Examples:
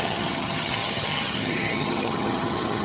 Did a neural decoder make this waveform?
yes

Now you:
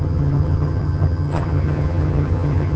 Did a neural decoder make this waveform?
yes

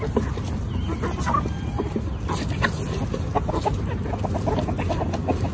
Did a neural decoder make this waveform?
no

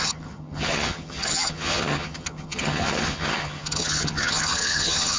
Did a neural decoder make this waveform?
yes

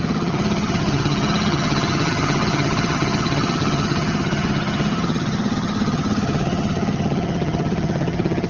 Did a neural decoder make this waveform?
yes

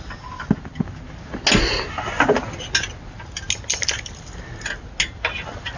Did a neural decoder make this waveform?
no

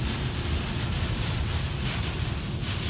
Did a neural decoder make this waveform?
no